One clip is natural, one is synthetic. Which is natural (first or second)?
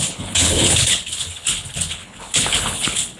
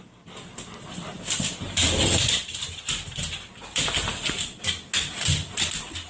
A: second